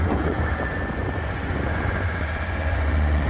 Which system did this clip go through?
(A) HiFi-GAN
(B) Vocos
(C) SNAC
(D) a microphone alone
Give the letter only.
B